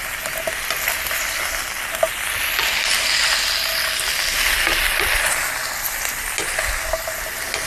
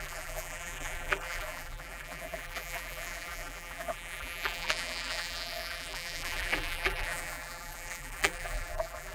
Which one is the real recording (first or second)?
first